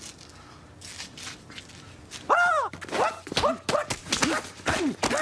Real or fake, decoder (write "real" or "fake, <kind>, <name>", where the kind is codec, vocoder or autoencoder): real